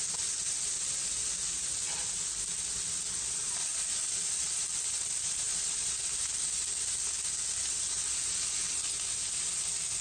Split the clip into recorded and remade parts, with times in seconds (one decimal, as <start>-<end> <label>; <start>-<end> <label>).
0.0-10.0 recorded

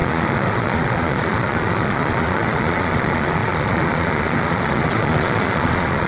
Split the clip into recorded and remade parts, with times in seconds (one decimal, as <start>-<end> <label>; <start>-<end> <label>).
0.0-6.1 remade

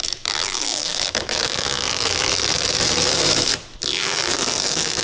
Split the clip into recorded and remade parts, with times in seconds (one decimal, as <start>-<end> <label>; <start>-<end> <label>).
0.0-3.5 remade; 3.5-4.6 recorded; 4.6-5.0 remade